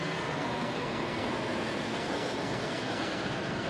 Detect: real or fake fake